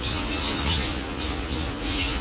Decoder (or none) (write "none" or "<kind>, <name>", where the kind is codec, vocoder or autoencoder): vocoder, Vocos